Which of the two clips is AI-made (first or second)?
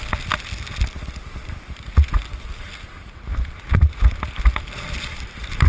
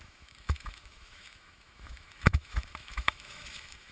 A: second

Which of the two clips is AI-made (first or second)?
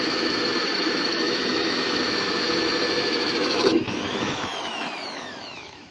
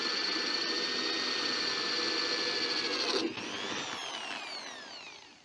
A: first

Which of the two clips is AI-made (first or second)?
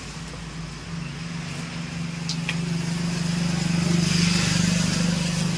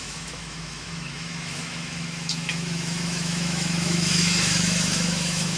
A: second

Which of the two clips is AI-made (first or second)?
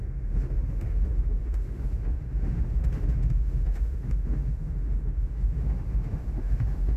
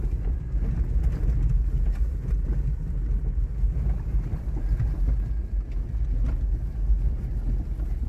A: first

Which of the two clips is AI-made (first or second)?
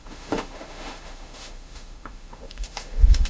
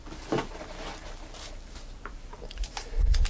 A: first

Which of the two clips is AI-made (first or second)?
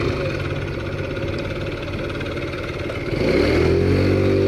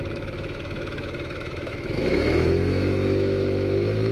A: second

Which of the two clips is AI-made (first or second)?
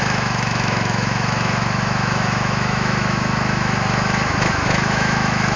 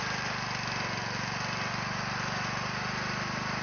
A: first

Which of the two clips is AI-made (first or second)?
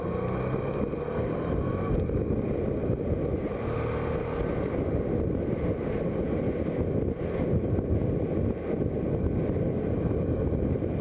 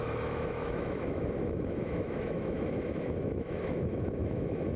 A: second